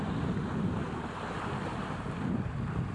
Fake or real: real